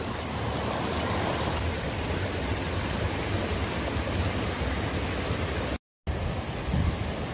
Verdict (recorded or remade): recorded